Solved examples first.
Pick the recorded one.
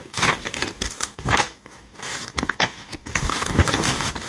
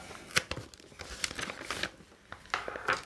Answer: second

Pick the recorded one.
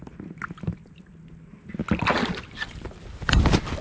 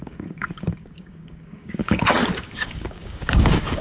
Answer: first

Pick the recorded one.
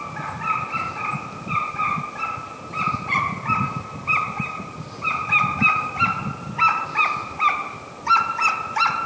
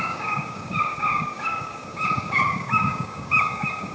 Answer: first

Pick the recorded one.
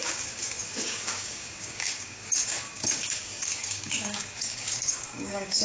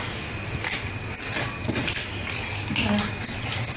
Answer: second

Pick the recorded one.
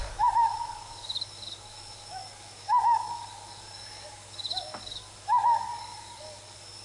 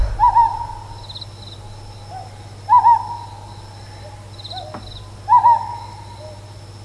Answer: second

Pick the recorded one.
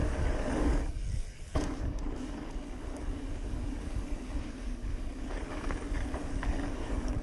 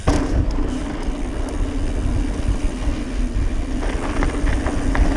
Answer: second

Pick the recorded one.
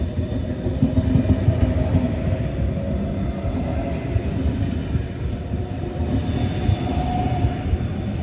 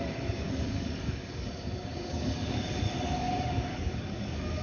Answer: first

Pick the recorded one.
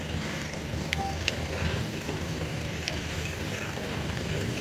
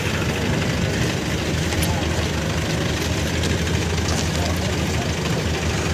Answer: second